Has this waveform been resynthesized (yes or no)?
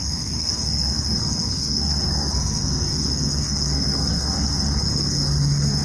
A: yes